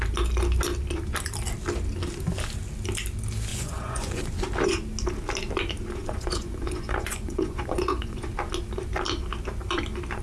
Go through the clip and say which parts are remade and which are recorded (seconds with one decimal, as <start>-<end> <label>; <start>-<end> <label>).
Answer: 0.0-3.5 recorded; 3.5-4.2 remade; 4.2-6.0 recorded; 6.0-8.3 remade; 8.3-10.2 recorded